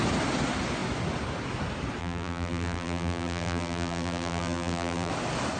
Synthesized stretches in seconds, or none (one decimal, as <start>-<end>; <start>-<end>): 2.0-5.1